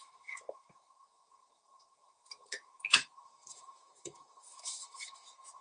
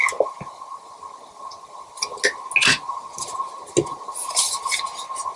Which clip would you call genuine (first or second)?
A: second